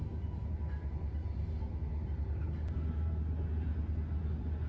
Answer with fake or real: real